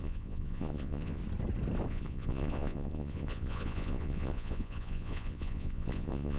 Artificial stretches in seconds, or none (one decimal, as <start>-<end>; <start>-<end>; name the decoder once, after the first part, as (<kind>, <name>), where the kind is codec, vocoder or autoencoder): 0.0-1.2 (vocoder, Vocos); 1.9-6.4